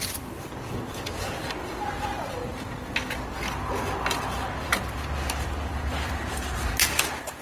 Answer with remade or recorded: recorded